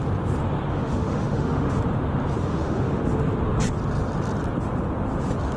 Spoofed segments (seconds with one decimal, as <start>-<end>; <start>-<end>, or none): 0.7-1.8; 2.4-3.0